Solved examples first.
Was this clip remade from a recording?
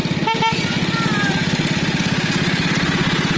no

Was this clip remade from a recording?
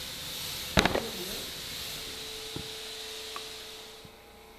no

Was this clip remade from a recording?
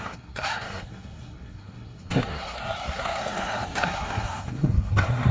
yes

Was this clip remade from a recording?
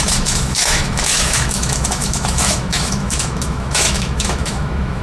yes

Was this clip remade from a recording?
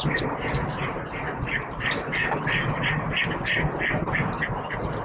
no